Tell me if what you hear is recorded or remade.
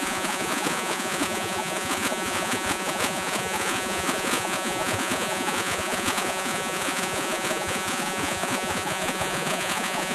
remade